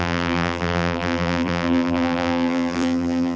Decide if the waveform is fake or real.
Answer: fake